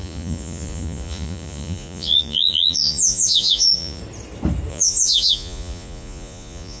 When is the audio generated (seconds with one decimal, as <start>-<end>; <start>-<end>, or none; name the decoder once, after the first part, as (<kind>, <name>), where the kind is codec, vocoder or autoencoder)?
0.0-4.0 (vocoder, Vocos); 4.7-6.8